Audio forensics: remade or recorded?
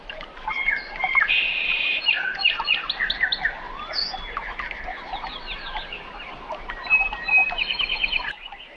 recorded